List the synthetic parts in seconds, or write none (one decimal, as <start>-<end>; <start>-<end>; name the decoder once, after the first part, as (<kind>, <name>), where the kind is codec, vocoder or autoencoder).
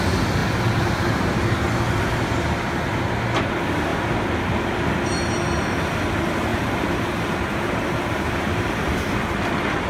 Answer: 6.5-8.9 (vocoder, BigVGAN v2)